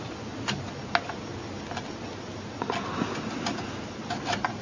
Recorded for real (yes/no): yes